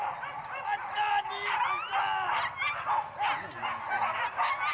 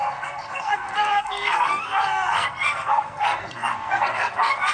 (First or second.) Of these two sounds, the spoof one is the second